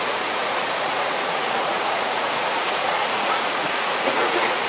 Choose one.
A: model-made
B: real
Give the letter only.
A